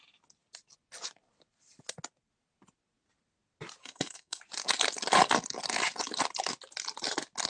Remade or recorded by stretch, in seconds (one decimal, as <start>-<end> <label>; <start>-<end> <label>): 0.0-3.8 recorded; 3.8-4.4 remade; 4.4-7.5 recorded